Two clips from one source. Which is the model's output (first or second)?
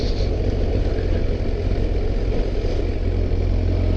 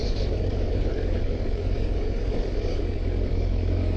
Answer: second